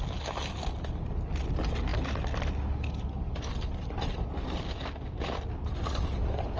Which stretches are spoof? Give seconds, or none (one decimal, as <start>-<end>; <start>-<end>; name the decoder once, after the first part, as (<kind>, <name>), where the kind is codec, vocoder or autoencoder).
none

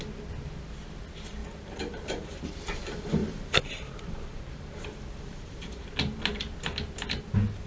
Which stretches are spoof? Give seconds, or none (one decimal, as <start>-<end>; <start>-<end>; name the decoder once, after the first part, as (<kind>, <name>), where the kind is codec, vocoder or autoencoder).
1.4-2.4 (vocoder, BigVGAN v2); 3.2-5.9

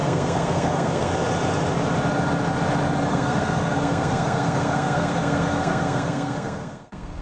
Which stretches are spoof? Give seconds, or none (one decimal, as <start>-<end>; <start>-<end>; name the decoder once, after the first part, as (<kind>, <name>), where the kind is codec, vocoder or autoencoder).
0.0-1.1 (codec, SNAC); 3.1-7.2

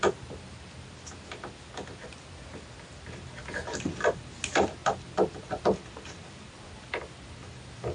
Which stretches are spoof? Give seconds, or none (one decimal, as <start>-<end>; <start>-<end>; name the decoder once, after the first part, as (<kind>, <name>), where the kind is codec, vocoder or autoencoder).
4.8-6.7 (vocoder, BigVGAN v2)

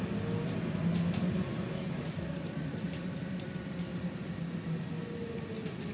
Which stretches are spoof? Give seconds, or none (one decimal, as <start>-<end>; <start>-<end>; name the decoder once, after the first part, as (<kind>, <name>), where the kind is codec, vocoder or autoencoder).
1.5-5.0 (vocoder, BigVGAN v2)

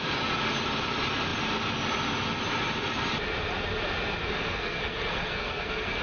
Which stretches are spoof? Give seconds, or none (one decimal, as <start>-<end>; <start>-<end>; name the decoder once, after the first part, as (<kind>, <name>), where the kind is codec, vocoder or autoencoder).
4.2-6.0 (codec, SNAC)

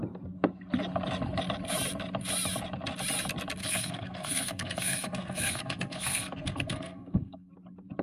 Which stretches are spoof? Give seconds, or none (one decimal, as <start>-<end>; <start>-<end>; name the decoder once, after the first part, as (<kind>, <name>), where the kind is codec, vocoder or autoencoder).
3.6-7.5 (codec, SNAC)